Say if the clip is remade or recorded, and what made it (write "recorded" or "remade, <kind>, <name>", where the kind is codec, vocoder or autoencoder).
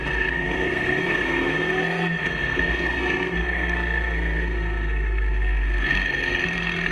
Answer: remade, codec, SNAC